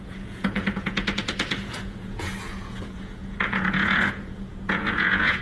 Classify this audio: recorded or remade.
remade